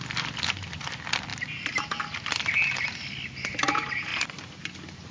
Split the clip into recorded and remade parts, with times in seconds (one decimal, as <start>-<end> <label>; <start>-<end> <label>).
0.0-5.1 recorded